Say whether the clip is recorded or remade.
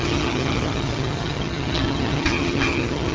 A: remade